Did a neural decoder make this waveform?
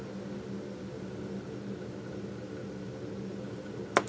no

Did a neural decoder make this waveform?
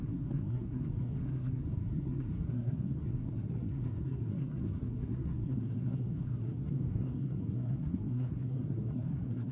yes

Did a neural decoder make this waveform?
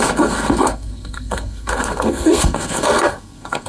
yes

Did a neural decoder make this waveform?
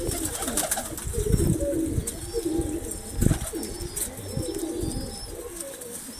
no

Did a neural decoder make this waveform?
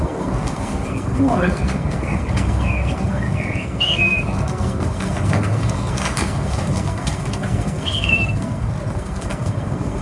yes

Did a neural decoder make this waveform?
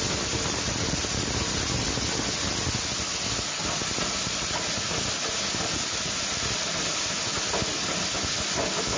no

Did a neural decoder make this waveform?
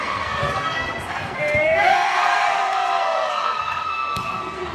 yes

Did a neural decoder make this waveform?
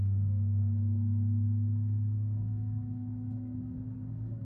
yes